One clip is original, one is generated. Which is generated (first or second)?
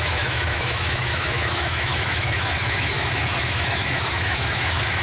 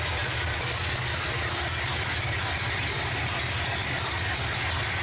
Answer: first